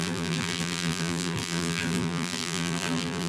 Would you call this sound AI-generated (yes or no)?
yes